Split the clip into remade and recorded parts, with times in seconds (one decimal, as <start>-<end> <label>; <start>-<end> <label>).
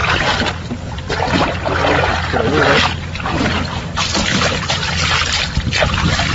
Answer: 0.0-6.3 recorded